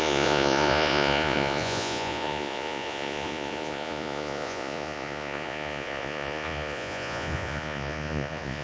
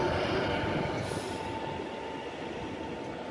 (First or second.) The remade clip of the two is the first